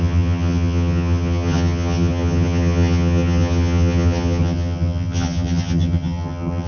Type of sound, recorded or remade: remade